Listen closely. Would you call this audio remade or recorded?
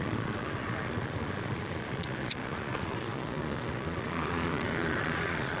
remade